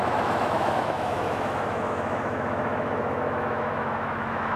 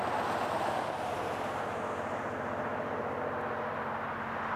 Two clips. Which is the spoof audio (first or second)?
first